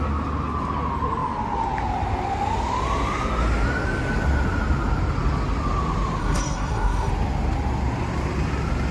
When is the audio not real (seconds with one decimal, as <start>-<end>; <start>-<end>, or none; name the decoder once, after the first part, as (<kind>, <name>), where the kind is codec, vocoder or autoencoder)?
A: 6.2-7.1 (codec, SNAC)